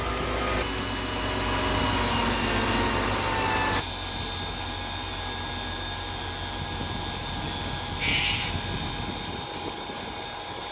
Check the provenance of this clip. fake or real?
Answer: real